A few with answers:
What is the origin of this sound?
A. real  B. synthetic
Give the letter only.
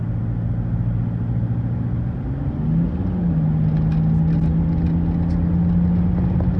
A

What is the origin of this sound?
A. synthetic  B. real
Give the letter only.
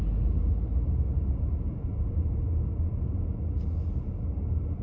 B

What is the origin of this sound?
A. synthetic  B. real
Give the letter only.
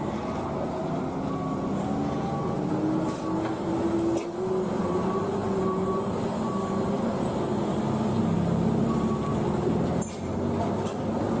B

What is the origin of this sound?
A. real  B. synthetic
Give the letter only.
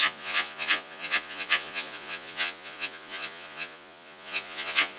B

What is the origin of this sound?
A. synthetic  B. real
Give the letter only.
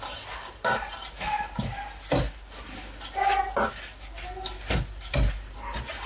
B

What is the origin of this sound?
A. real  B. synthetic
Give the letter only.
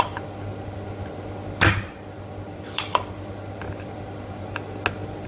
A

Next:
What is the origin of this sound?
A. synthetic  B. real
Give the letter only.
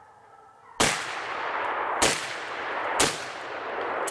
B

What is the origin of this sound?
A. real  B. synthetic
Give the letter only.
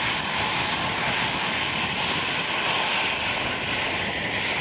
A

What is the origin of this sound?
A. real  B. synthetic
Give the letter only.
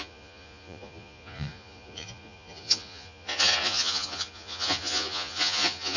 B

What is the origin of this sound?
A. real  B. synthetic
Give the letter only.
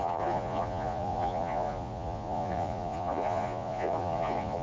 B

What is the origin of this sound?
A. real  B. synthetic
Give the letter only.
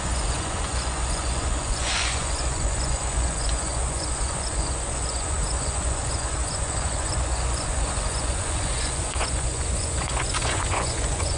B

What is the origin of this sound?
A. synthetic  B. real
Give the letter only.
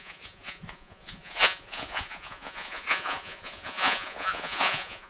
A